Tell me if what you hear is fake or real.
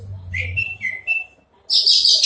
real